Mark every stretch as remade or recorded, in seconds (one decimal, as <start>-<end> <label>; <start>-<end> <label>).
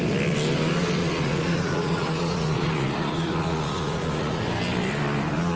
0.0-1.0 recorded; 1.0-4.4 remade; 4.4-5.6 recorded